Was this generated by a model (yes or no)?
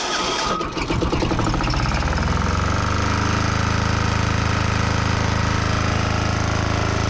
no